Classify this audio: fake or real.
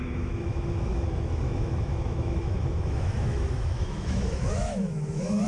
fake